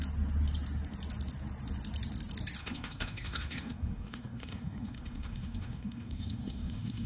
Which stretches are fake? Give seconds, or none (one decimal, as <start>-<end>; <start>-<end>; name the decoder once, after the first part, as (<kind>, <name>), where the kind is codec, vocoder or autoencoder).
2.6-7.1 (codec, SNAC)